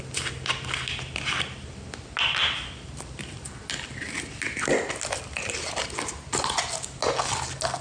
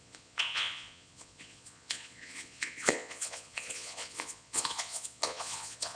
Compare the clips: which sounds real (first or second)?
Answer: first